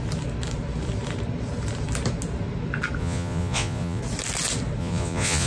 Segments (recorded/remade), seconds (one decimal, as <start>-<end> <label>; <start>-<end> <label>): 0.0-3.0 recorded; 3.0-4.0 remade; 4.0-4.8 recorded; 4.8-5.5 remade